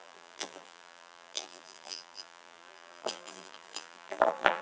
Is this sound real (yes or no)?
no